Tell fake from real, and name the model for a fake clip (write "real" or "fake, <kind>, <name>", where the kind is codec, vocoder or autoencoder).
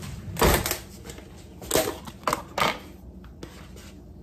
real